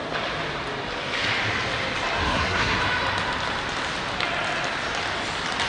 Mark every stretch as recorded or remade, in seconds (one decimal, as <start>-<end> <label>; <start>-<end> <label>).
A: 0.0-2.2 recorded; 2.2-2.8 remade; 2.8-5.7 recorded